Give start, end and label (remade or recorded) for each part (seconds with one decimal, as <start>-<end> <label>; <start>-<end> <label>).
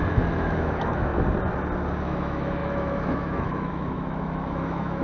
0.0-1.1 remade; 1.1-2.0 recorded; 2.0-5.0 remade